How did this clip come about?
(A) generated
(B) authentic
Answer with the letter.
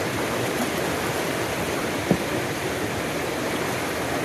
B